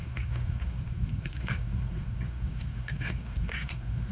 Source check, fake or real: fake